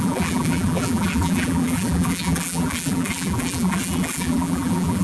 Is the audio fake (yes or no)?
yes